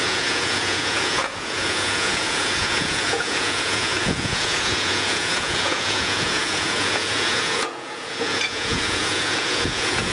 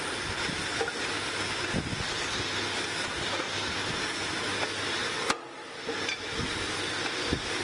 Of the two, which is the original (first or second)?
second